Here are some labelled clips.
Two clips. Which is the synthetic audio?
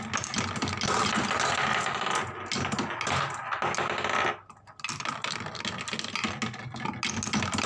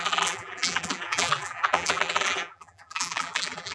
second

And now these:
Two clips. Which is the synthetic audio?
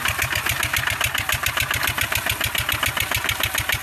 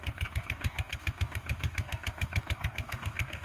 second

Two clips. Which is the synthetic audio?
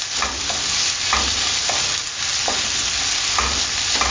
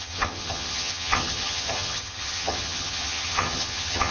second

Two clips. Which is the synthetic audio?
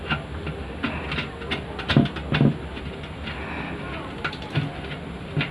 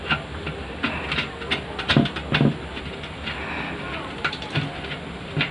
second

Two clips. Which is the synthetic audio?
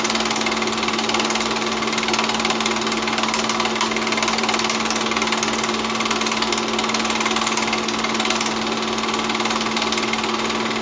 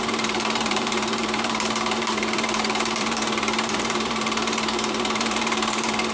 second